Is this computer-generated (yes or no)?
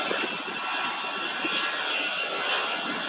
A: yes